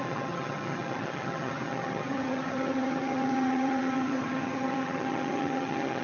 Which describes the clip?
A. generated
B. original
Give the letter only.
A